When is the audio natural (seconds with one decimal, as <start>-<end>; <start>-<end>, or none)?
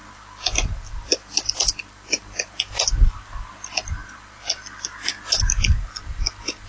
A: 2.6-4.0; 5.1-6.7